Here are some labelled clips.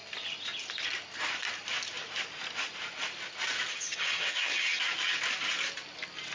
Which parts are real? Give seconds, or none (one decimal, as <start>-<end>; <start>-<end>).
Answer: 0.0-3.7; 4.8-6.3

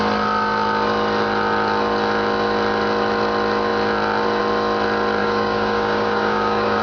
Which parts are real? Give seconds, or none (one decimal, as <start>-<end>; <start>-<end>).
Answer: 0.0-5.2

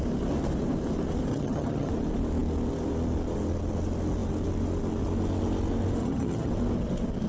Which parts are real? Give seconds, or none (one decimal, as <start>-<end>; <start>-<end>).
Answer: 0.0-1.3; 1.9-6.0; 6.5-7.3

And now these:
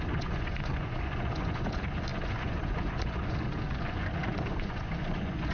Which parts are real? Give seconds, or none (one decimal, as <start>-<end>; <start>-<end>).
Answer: none